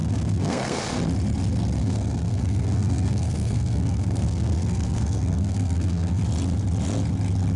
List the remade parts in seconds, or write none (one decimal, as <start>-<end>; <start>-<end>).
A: 0.0-0.8; 1.8-6.2